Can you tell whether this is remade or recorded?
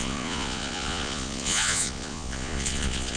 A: remade